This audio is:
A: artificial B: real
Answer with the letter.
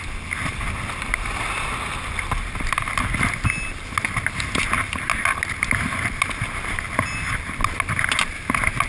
B